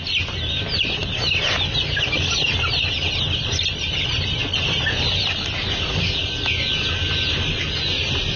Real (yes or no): yes